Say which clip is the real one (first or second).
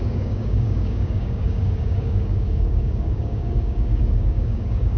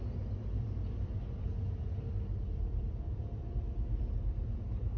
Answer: second